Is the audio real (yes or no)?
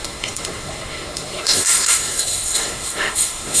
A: no